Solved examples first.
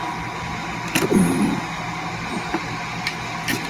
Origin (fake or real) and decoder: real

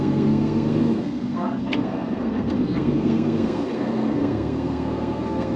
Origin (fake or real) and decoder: fake, codec, SNAC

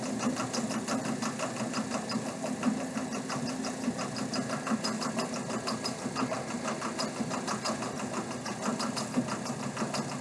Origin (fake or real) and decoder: real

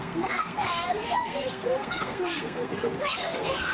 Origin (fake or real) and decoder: fake, codec, SNAC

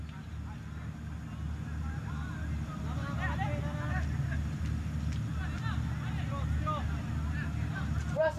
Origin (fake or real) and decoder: real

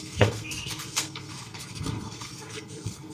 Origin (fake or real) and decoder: fake, codec, SNAC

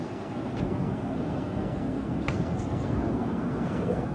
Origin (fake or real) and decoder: fake, codec, SNAC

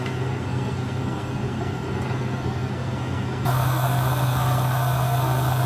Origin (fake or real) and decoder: fake, codec, SNAC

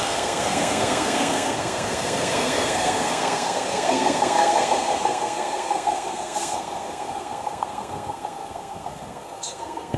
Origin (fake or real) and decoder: fake, codec, SNAC